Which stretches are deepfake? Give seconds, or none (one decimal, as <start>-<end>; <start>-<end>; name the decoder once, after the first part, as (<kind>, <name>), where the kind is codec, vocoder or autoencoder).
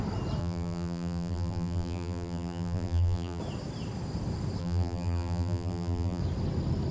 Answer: 0.4-3.4 (vocoder, BigVGAN v2); 4.6-6.2